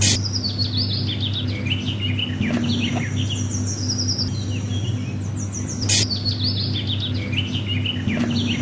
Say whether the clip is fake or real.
real